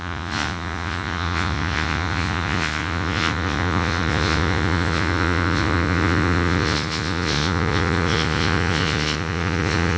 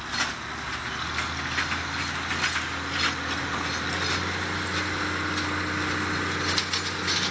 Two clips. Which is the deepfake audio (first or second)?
first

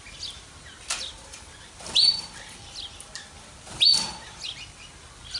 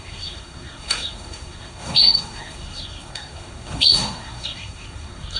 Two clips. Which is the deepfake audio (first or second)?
second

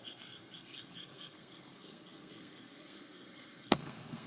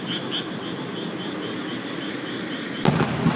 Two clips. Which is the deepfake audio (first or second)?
first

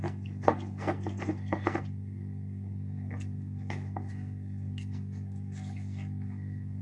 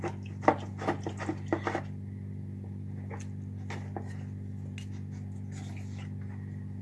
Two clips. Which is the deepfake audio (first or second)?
first